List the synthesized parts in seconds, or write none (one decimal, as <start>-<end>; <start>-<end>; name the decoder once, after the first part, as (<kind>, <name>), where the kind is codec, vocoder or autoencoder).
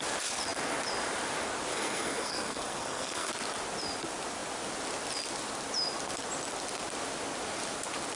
1.7-3.3 (codec, SNAC)